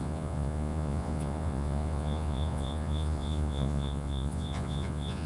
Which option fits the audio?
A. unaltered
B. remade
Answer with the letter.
B